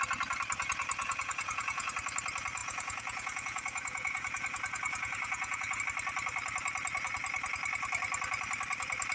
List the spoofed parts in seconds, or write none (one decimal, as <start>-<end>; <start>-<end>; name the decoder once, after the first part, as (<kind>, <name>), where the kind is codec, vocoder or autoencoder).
1.0-1.9 (vocoder, Vocos); 2.6-5.8